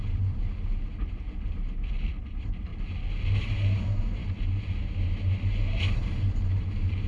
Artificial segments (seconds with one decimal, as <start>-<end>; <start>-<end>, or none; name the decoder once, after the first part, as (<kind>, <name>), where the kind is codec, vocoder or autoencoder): 0.0-0.4 (vocoder, BigVGAN v2); 2.3-2.7; 3.4-4.2; 5.5-7.1